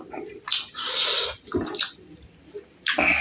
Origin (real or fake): fake